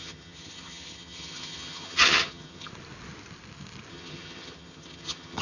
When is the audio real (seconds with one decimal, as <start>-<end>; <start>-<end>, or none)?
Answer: 2.7-3.9